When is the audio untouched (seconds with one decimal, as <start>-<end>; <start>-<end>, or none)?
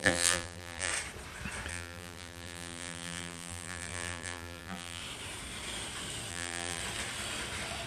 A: 0.9-1.7; 5.0-6.3; 6.8-7.9